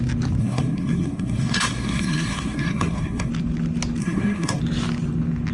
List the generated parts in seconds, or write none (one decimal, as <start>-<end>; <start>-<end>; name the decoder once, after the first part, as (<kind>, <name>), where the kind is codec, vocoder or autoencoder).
0.4-3.3 (codec, SNAC); 4.0-4.6